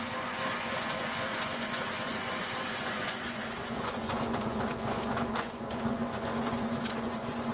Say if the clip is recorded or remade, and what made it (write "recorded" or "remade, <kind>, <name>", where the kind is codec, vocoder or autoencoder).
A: remade, vocoder, Vocos